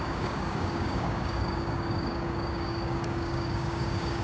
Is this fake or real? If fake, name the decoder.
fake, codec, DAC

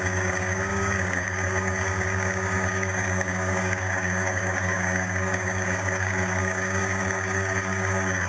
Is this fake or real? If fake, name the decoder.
fake, codec, DAC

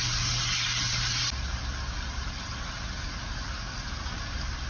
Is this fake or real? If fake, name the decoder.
real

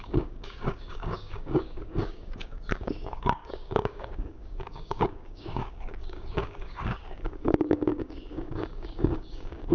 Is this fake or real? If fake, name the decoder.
fake, codec, DAC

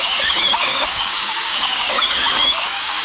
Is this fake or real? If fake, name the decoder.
fake, codec, DAC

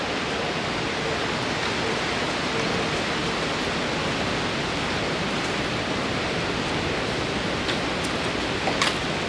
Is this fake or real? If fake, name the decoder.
real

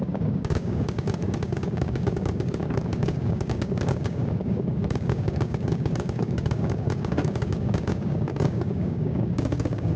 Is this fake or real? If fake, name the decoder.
fake, codec, DAC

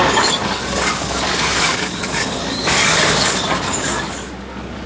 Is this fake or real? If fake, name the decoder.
fake, codec, DAC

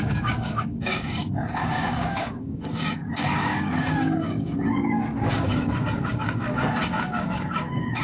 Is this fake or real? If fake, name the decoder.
fake, codec, DAC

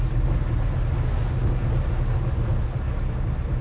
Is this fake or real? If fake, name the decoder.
real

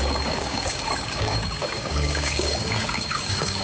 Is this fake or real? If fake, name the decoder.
fake, codec, DAC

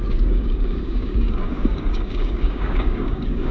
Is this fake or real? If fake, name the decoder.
fake, codec, DAC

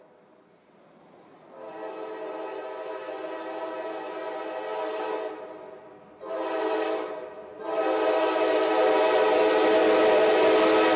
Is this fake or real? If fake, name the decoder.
real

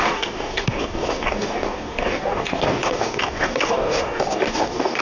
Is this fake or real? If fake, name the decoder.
fake, codec, DAC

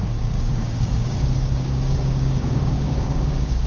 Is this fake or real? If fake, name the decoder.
fake, codec, DAC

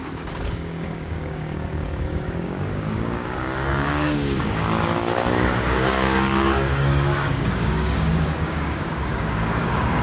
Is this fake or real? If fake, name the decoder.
fake, codec, DAC